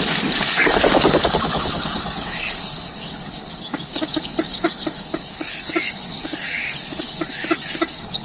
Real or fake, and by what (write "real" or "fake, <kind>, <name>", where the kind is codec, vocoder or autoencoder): fake, codec, DAC